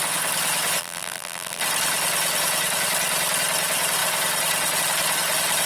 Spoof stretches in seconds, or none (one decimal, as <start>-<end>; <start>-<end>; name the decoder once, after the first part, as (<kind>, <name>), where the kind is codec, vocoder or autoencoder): 0.8-1.6 (vocoder, BigVGAN v2)

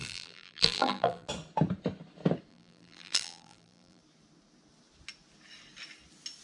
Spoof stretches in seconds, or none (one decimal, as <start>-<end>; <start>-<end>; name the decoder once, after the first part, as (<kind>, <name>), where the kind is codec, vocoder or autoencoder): 0.0-1.3 (vocoder, BigVGAN v2); 2.5-4.0